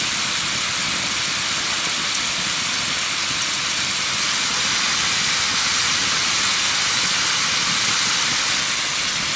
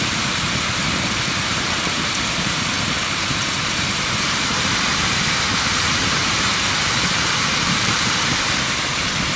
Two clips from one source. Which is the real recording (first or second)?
first